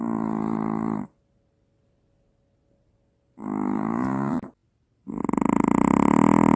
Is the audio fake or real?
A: real